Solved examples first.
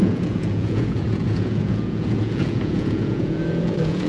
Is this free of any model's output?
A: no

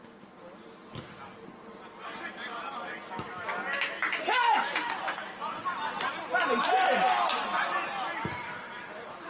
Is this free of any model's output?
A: yes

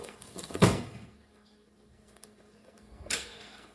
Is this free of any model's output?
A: no